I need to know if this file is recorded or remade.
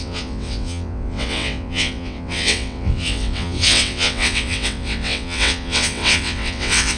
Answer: remade